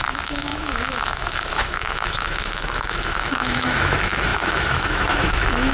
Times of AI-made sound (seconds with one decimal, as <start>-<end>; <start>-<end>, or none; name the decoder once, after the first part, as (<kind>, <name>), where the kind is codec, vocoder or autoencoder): 0.0-5.7 (autoencoder, DAC-VAE)